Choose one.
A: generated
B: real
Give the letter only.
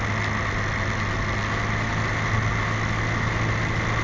B